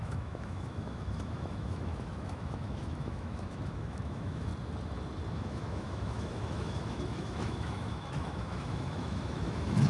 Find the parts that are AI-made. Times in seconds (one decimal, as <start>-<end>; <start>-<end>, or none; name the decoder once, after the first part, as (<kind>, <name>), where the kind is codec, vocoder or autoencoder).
0.0-4.5 (autoencoder, DAC-VAE); 5.3-9.9